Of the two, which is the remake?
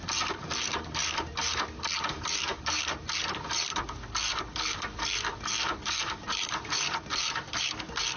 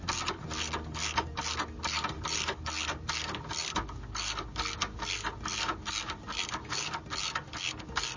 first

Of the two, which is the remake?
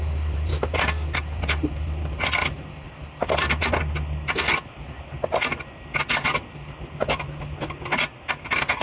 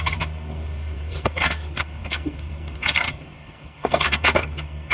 second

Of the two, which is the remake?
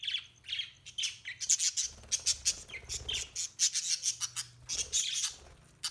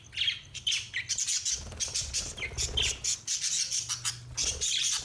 second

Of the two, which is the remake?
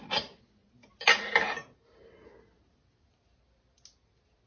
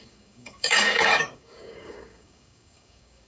second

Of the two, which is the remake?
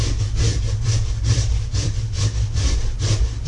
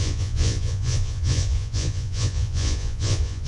second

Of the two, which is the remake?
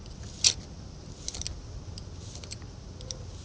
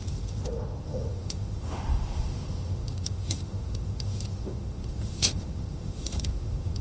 second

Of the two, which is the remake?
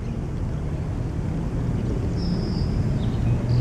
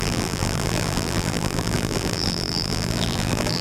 second